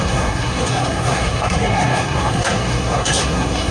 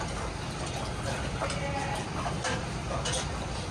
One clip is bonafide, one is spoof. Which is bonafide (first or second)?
second